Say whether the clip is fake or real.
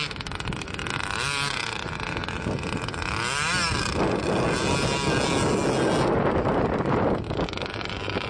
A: real